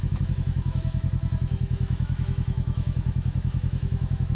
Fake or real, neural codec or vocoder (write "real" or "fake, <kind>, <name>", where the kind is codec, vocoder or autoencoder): fake, autoencoder, DAC-VAE